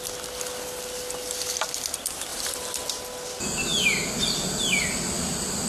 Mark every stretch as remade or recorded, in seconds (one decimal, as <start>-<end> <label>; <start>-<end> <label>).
0.0-2.3 recorded; 2.3-2.9 remade; 2.9-5.7 recorded